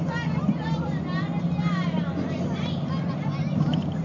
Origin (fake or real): real